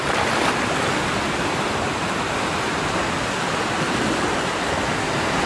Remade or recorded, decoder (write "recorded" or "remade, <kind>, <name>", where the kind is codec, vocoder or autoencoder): recorded